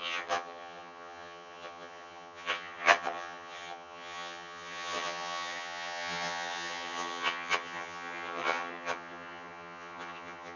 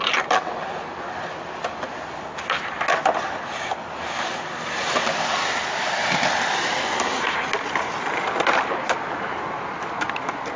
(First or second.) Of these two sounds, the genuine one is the second